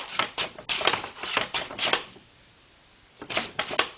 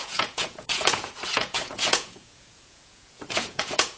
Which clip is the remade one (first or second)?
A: second